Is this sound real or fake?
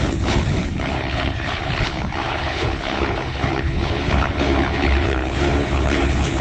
fake